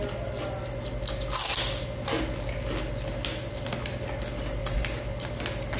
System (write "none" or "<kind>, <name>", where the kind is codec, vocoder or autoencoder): none